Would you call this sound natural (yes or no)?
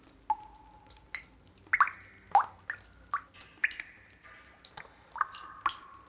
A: yes